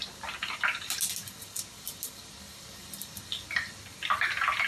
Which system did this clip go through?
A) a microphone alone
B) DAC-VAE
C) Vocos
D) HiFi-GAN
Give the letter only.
A